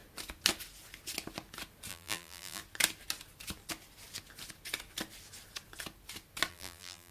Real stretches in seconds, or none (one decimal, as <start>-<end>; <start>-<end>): 0.0-1.9; 2.6-6.5